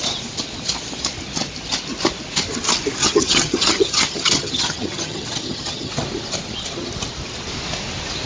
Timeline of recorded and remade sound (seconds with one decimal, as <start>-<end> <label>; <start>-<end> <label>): 0.0-3.0 recorded; 3.0-5.9 remade; 5.9-8.3 recorded